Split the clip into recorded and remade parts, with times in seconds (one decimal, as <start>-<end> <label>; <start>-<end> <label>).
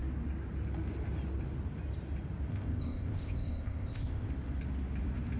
0.0-2.5 recorded; 2.5-4.3 remade; 4.3-5.4 recorded